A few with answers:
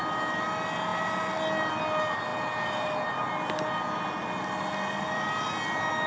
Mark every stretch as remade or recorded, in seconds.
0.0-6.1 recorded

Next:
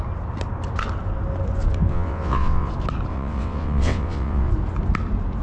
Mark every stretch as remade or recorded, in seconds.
0.0-1.9 recorded; 1.9-2.7 remade; 2.7-3.1 recorded; 3.1-4.5 remade; 4.5-5.4 recorded

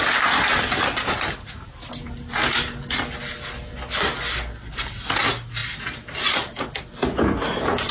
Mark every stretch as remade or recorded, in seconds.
0.0-7.9 recorded